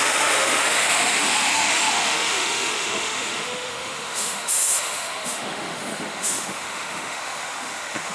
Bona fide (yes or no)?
no